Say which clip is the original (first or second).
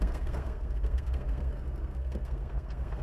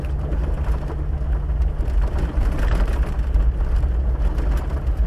second